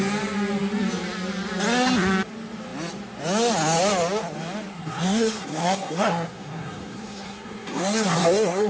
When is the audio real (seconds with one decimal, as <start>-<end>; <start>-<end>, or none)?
0.0-4.7